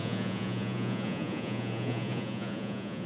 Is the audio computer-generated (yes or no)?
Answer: yes